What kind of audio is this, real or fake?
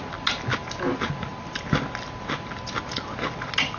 real